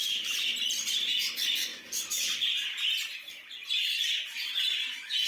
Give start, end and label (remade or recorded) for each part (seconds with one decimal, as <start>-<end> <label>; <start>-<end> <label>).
0.0-1.0 remade; 1.0-1.7 recorded; 1.7-2.5 remade; 2.5-3.6 recorded; 3.6-4.7 remade; 4.7-5.3 recorded